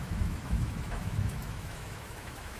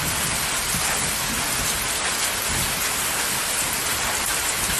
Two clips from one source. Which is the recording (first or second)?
second